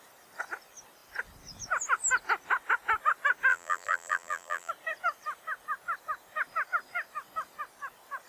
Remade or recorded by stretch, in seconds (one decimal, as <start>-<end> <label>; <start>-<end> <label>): 0.0-3.5 recorded; 3.5-4.7 remade; 4.7-8.3 recorded